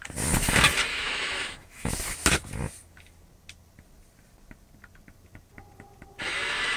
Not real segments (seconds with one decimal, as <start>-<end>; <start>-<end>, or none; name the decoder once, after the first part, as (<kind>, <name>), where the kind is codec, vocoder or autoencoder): 0.9-1.9 (autoencoder, DAC-VAE)

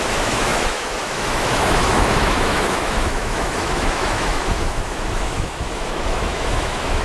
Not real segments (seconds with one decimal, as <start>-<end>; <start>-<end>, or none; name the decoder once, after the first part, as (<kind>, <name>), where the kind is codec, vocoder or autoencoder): 0.0-7.0 (autoencoder, DAC-VAE)

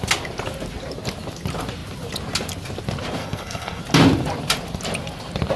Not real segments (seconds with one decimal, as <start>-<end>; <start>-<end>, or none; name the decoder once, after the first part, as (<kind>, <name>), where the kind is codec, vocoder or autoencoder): 3.2-3.8 (codec, SNAC)

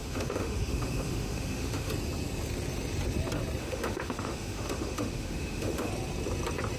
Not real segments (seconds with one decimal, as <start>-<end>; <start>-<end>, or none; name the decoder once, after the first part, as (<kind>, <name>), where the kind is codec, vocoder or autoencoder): 0.0-1.9 (autoencoder, DAC-VAE); 3.6-5.9

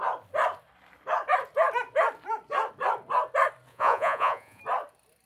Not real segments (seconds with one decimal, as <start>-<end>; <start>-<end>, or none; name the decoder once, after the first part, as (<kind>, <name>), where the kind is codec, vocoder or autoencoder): 3.7-4.6 (vocoder, Vocos)

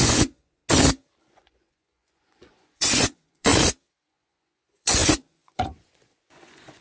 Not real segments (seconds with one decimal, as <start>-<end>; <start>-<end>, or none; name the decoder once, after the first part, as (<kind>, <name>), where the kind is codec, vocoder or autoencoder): 0.0-0.6 (vocoder, Vocos); 1.3-3.5; 4.1-6.8